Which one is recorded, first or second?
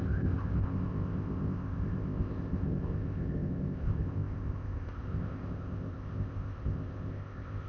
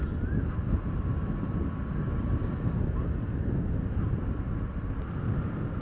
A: second